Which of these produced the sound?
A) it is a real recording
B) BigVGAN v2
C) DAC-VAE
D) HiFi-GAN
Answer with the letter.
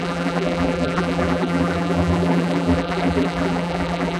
B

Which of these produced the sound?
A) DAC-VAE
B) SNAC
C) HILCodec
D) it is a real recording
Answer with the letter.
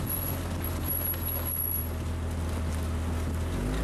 D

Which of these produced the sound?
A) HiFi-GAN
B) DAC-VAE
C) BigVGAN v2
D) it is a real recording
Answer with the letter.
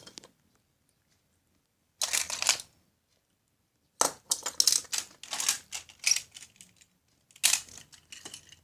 D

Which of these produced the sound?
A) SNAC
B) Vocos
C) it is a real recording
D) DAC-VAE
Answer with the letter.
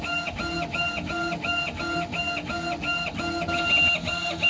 C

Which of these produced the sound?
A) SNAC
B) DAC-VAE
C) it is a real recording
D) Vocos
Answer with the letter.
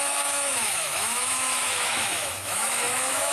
B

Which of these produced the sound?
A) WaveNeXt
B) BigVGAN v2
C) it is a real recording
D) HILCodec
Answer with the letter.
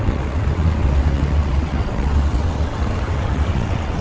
A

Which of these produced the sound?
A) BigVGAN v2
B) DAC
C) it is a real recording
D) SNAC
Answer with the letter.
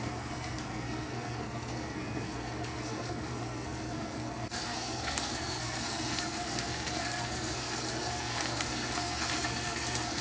D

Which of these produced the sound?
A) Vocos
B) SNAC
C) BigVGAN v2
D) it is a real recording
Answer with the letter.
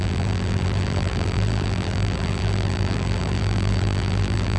C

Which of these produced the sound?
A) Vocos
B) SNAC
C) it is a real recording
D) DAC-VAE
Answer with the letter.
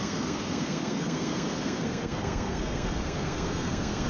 B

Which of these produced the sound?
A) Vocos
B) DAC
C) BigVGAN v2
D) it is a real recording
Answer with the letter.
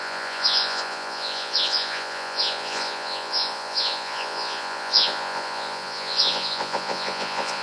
A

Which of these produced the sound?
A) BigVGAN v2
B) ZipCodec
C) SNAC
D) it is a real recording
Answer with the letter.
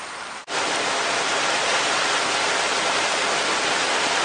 D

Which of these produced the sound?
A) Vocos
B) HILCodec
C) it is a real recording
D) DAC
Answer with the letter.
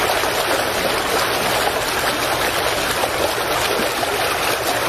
C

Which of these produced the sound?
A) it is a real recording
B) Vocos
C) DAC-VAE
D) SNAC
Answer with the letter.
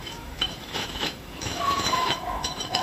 C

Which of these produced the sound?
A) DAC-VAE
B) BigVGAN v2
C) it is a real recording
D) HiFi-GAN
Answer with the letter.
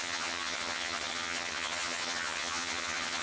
D